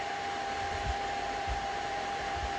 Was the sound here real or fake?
fake